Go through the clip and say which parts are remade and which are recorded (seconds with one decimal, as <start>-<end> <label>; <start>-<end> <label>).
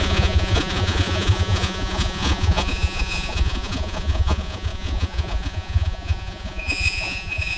0.0-7.6 remade